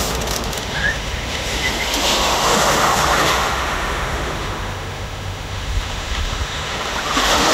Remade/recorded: remade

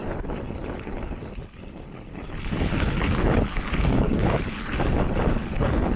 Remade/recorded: remade